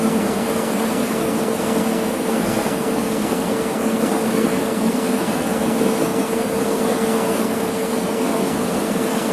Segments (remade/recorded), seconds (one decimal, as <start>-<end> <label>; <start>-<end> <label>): 0.0-9.3 remade